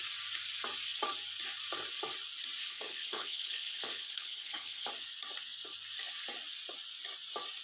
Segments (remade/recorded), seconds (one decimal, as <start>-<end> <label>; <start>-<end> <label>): 0.0-2.6 recorded; 2.6-4.9 remade; 4.9-7.6 recorded